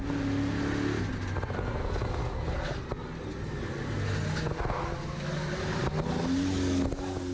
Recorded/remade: recorded